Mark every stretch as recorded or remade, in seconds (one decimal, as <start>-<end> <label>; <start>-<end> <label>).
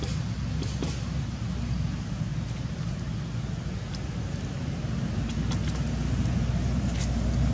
0.0-7.5 recorded